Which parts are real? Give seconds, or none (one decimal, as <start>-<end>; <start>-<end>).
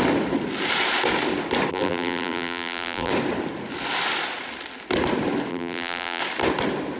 0.0-1.7; 3.1-5.5; 6.2-7.0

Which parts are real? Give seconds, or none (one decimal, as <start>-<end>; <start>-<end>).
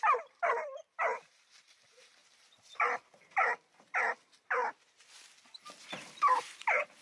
2.2-4.0; 4.6-5.8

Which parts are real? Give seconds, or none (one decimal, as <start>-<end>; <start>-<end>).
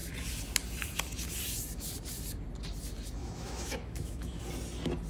0.0-3.2; 4.4-5.1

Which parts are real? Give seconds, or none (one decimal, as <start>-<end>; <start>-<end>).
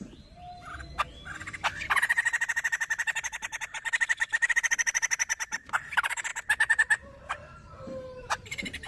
0.4-5.7; 6.3-7.2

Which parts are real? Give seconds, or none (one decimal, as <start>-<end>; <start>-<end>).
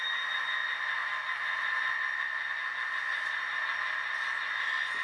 0.0-5.0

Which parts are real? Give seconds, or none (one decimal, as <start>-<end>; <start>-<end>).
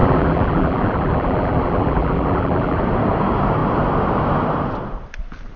2.8-5.6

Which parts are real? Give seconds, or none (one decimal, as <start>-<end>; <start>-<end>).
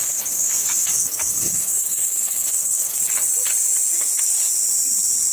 3.0-5.3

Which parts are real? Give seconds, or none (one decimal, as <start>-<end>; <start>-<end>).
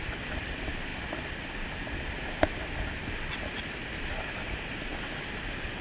0.0-5.8